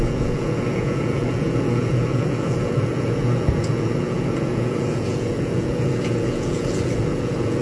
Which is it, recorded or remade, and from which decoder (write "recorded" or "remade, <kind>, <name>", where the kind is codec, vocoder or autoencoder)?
remade, vocoder, Vocos